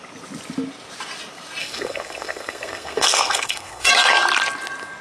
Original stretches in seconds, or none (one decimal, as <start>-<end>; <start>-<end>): 0.0-1.6; 3.9-5.0